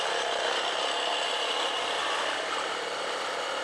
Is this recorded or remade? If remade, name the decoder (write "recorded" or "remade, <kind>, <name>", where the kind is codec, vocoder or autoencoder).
recorded